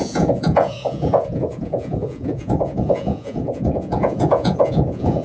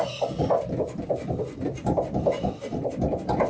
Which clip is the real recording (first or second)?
second